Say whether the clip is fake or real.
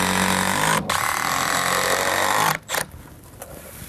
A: real